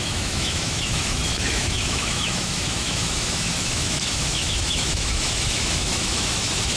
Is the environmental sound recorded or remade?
remade